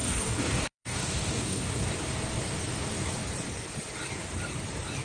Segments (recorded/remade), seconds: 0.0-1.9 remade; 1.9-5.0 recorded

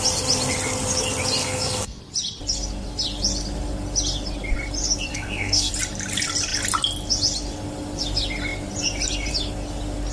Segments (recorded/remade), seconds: 0.0-1.4 recorded; 1.4-2.0 remade; 2.0-5.1 recorded; 5.1-5.7 remade; 5.7-10.1 recorded

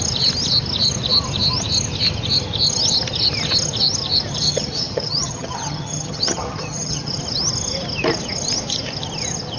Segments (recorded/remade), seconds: 0.0-4.5 recorded; 4.5-7.1 remade; 7.1-9.6 recorded